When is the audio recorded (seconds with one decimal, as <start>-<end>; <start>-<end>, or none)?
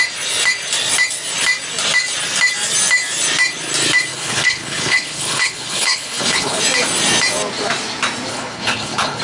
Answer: 0.0-4.1; 6.6-8.3